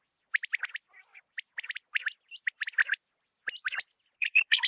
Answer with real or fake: real